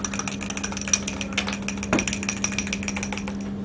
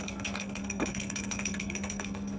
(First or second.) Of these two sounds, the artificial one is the second